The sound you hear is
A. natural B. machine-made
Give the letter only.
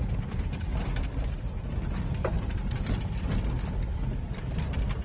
A